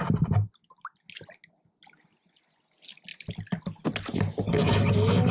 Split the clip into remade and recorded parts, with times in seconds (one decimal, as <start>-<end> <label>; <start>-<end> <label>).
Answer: 0.0-5.3 recorded